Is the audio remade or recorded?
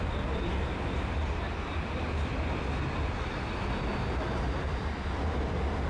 recorded